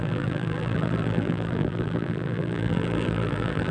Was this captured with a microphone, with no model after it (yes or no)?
no